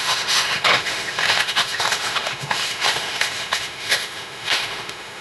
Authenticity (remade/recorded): remade